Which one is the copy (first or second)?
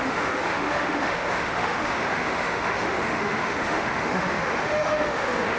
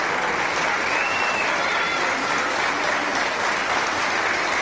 first